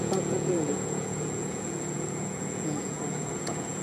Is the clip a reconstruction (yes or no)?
yes